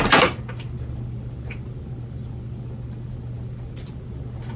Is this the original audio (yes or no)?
yes